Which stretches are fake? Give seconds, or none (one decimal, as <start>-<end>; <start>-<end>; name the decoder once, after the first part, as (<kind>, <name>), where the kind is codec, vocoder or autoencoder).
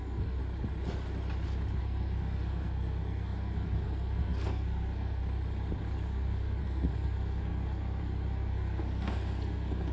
0.0-0.4 (codec, SNAC); 1.8-5.2; 6.1-9.9